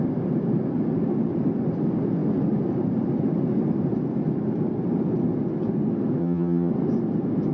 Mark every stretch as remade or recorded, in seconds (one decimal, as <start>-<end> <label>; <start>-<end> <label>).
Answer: 0.0-6.2 recorded; 6.2-6.7 remade; 6.7-7.5 recorded